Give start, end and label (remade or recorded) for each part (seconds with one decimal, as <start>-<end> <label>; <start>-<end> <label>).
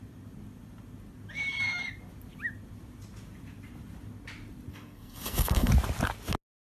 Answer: 0.0-4.7 recorded; 4.7-5.7 remade; 5.7-6.7 recorded